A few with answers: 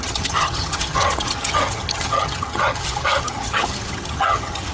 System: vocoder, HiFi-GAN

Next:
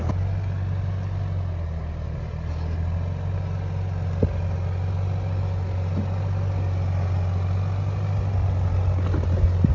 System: none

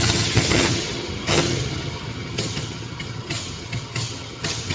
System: vocoder, HiFi-GAN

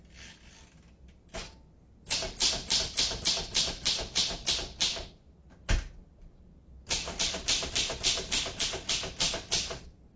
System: none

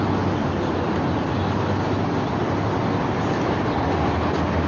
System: none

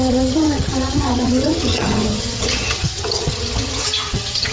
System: vocoder, HiFi-GAN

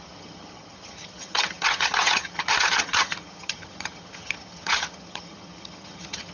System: vocoder, HiFi-GAN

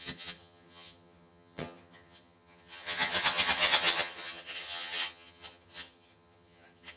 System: vocoder, HiFi-GAN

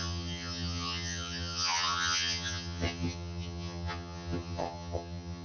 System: vocoder, HiFi-GAN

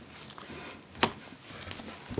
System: none